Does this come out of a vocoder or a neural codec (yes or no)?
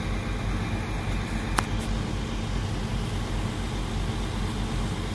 no